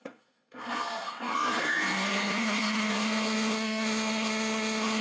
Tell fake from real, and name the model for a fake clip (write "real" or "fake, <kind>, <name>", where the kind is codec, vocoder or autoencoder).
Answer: fake, codec, SNAC